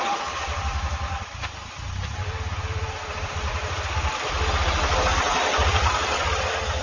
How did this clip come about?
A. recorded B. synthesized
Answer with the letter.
A